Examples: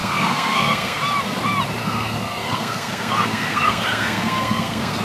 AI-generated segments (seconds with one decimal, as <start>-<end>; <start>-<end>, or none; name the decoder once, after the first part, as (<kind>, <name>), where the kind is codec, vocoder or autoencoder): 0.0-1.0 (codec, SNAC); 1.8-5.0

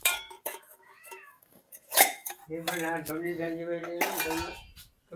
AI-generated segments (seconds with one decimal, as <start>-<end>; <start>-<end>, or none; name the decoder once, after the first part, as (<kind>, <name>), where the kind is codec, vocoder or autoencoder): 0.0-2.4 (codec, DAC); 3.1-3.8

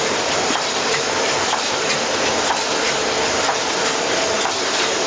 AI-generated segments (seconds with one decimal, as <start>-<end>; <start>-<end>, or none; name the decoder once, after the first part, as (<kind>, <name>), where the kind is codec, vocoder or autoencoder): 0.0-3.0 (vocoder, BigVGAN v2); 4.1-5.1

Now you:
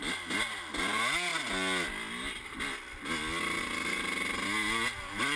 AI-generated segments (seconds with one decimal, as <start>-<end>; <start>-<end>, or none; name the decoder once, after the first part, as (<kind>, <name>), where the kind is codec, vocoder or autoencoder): none

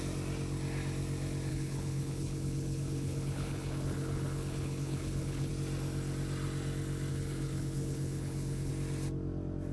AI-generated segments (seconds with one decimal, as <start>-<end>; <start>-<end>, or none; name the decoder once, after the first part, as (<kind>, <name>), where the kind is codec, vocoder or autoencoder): 1.5-5.5 (codec, HILCodec); 7.1-8.7

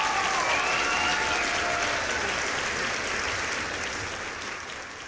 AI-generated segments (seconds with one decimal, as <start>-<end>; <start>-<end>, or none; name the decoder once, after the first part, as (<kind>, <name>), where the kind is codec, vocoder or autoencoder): none